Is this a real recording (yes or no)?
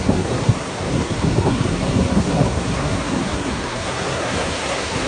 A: no